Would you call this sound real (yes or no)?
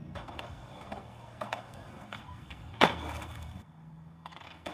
no